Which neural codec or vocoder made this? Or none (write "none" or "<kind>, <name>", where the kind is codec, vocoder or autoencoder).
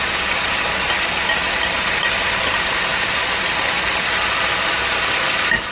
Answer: none